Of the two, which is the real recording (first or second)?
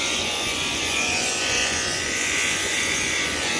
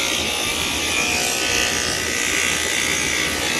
second